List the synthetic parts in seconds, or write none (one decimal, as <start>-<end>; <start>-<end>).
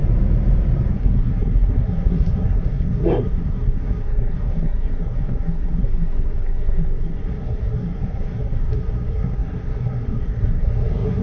0.9-11.2